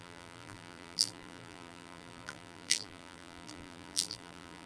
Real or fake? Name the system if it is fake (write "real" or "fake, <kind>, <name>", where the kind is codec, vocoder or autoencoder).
fake, vocoder, BigVGAN v2